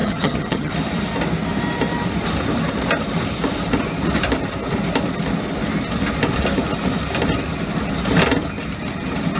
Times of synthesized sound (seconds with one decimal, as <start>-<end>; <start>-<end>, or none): 0.0-0.7